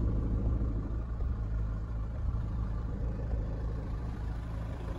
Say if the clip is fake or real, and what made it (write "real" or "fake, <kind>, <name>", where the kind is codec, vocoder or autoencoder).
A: fake, vocoder, BigVGAN v2